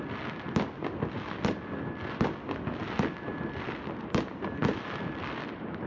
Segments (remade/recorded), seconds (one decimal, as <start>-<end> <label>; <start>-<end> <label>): 0.0-5.9 recorded

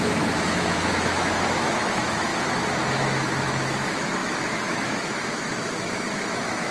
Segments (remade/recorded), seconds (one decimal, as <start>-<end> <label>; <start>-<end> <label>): 0.0-2.3 remade; 2.3-2.9 recorded; 2.9-6.7 remade

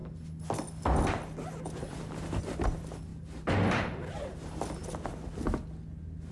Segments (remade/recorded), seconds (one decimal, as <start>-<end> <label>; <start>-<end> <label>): 0.0-6.3 recorded

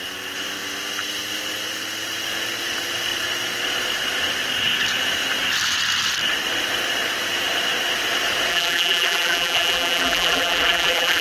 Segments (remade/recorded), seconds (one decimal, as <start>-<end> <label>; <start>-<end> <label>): 0.0-8.5 recorded; 8.5-11.2 remade

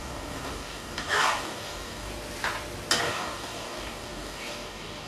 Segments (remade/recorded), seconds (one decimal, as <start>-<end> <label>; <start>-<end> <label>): 0.0-2.1 remade; 2.1-3.0 recorded; 3.0-5.1 remade

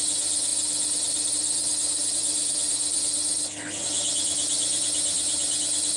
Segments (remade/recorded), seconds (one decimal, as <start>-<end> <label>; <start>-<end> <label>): 0.0-6.0 recorded

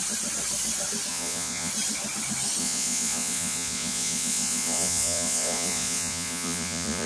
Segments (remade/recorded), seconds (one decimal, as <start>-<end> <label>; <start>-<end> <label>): 0.0-1.1 recorded; 1.1-1.7 remade; 1.7-2.6 recorded; 2.6-7.1 remade